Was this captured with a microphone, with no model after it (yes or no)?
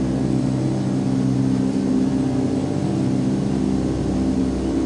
yes